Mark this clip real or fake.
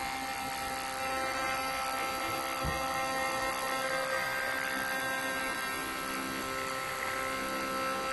real